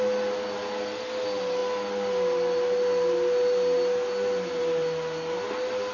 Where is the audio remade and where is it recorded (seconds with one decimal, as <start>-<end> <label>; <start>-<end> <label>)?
0.0-5.9 recorded